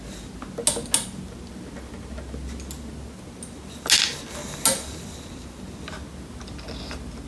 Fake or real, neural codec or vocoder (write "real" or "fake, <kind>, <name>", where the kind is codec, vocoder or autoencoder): real